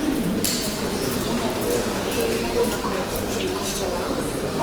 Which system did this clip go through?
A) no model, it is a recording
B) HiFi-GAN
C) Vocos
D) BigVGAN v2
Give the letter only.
D